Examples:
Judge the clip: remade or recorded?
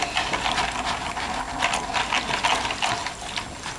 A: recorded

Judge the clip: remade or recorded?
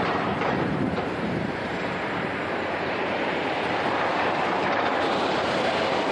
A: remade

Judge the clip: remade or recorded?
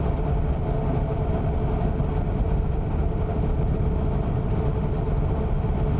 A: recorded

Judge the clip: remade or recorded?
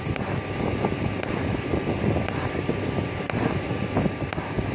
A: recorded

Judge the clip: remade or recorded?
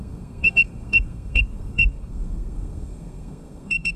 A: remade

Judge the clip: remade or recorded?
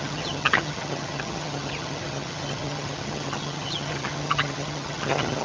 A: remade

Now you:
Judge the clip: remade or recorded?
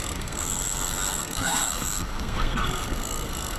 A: remade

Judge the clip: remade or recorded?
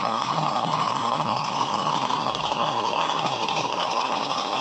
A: remade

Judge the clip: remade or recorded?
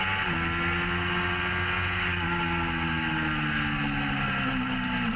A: recorded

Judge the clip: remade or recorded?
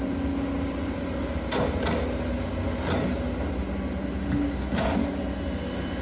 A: recorded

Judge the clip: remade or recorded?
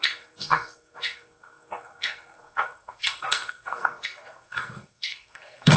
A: remade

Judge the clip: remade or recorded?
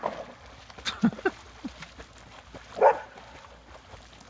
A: recorded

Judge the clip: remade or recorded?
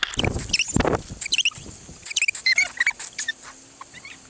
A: recorded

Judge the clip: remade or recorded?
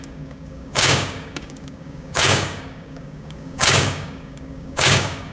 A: remade